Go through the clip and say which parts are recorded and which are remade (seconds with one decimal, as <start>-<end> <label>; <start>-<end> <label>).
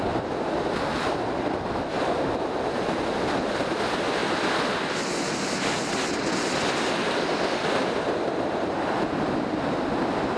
0.0-10.4 recorded